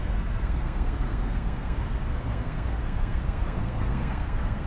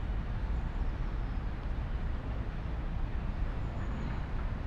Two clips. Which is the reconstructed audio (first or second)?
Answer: first